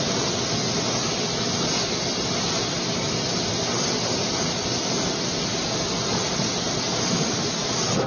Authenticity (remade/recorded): recorded